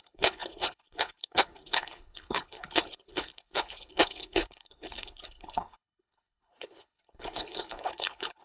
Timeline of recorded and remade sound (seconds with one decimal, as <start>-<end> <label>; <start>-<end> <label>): 0.0-8.4 remade

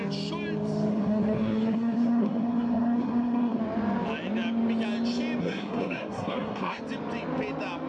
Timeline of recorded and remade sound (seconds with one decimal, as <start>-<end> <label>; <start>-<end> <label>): 0.0-0.9 recorded; 0.9-3.6 remade; 3.6-5.4 recorded; 5.4-6.8 remade; 6.8-7.9 recorded

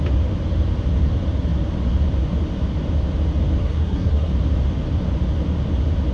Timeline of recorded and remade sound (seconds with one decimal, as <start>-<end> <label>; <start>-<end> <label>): 0.0-3.6 recorded; 3.6-4.3 remade; 4.3-6.1 recorded

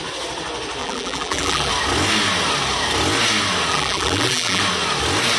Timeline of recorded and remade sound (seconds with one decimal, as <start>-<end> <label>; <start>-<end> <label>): 0.0-0.8 recorded; 0.8-1.7 remade; 1.7-3.7 recorded; 3.7-4.6 remade; 4.6-5.4 recorded

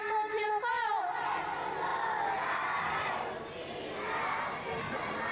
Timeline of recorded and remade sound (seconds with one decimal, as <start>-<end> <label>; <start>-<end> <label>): 0.0-1.9 recorded; 1.9-5.3 remade